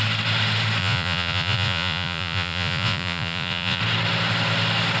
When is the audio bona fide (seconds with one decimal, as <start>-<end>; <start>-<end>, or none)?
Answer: 0.0-0.8; 3.8-5.0